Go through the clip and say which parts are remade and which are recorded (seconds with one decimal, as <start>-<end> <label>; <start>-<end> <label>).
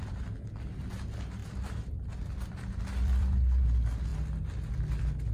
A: 0.0-1.4 recorded; 1.4-3.6 remade; 3.6-5.3 recorded